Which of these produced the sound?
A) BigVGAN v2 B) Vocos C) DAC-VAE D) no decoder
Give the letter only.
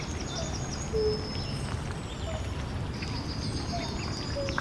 D